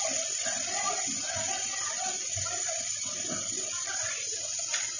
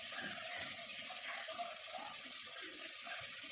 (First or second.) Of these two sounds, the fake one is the second